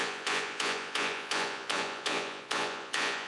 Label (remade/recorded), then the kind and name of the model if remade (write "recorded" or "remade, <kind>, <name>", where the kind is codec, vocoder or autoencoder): remade, vocoder, Vocos